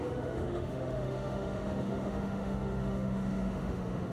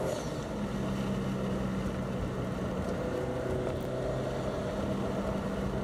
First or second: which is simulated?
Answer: first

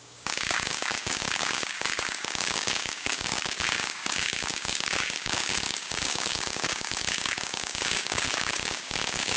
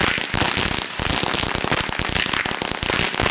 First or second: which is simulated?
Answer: first